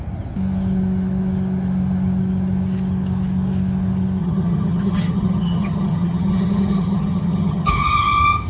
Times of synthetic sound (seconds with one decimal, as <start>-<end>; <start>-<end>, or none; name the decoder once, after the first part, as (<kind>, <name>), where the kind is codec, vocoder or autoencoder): 4.2-7.7 (vocoder, HiFi-GAN)